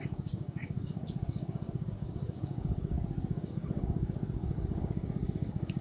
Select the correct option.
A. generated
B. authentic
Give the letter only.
A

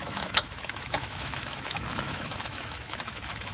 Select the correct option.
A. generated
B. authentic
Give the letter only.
A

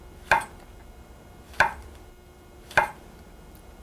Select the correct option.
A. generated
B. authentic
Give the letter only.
B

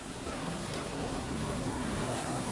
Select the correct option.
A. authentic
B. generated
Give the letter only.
B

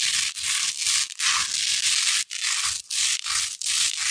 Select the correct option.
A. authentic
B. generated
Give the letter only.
A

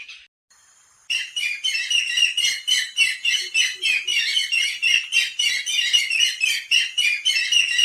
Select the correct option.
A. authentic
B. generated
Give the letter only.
A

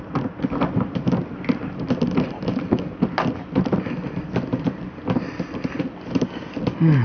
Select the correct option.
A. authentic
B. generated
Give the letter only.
A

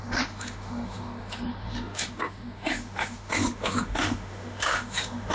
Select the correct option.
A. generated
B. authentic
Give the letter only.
A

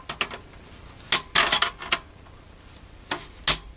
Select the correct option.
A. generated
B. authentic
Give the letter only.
B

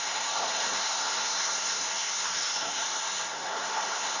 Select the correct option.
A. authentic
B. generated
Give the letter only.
B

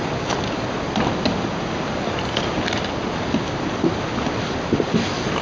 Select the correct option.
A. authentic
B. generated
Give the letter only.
A